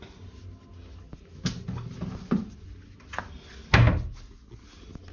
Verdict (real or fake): real